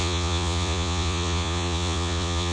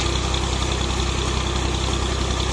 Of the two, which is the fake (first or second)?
first